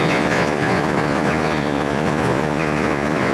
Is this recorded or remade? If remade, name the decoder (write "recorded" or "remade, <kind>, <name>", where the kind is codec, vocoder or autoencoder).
remade, vocoder, Vocos